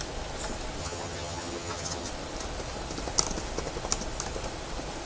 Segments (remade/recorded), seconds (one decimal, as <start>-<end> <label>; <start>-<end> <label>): 0.0-0.8 recorded; 0.8-2.1 remade; 2.1-5.1 recorded